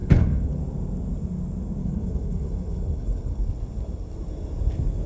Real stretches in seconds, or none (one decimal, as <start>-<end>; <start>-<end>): 0.6-1.8; 3.4-5.1